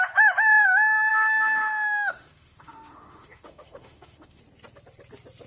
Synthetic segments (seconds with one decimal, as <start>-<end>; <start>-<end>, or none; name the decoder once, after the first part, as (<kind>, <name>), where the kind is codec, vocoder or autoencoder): 1.1-4.4 (autoencoder, DAC-VAE)